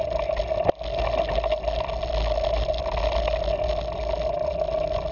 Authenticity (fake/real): real